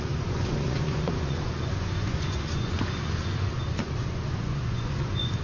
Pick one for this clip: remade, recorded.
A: remade